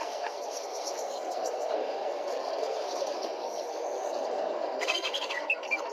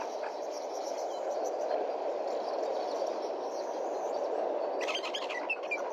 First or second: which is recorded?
second